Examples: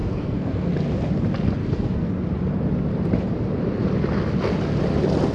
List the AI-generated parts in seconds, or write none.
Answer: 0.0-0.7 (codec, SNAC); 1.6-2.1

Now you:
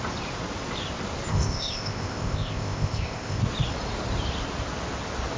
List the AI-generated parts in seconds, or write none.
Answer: 1.3-3.4 (codec, ZipCodec)

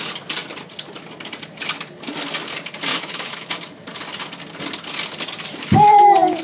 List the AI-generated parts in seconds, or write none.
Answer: 2.9-3.5 (autoencoder, DAC-VAE)